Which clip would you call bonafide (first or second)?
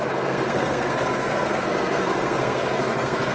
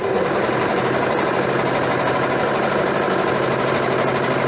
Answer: second